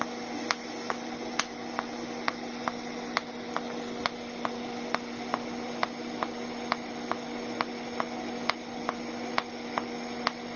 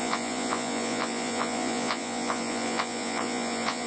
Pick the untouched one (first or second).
first